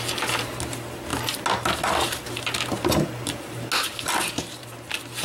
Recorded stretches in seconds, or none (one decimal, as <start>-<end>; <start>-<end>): 0.0-5.2

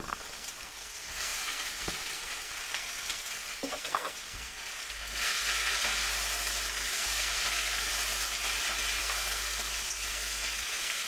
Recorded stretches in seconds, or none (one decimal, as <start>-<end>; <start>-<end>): 5.9-6.7; 7.9-9.0

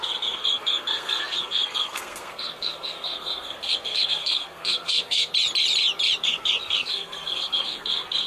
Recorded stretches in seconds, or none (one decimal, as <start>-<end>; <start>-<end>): 5.3-6.2